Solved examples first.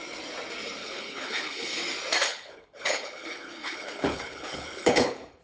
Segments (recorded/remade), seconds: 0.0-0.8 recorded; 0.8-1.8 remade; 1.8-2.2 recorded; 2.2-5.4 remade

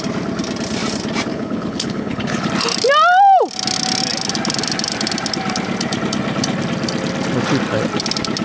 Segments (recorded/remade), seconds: 0.0-1.3 recorded; 1.3-2.5 remade; 2.5-8.4 recorded

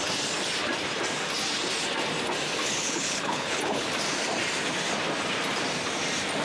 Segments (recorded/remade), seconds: 0.0-2.6 recorded; 2.6-3.9 remade; 3.9-6.4 recorded

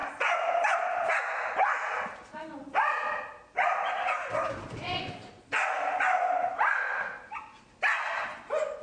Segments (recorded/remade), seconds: 0.0-8.8 recorded

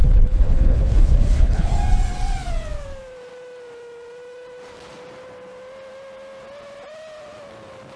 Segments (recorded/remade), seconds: 0.0-1.7 remade; 1.7-8.0 recorded

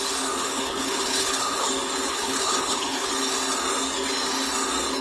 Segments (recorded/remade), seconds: 0.0-0.4 recorded; 0.4-1.7 remade; 1.7-2.1 recorded; 2.1-3.1 remade; 3.1-5.0 recorded

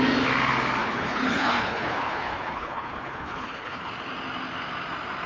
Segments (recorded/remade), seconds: 0.0-0.8 recorded; 0.8-3.9 remade; 3.9-5.3 recorded